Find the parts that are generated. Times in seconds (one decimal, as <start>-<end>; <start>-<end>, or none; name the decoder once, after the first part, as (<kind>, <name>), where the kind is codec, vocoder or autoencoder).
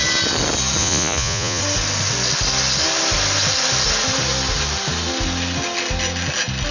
0.8-1.6 (vocoder, Vocos)